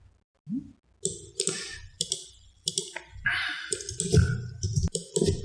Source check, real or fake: real